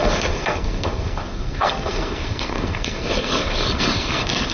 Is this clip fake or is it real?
fake